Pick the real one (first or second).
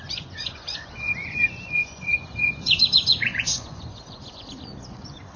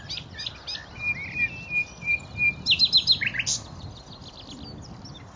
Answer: second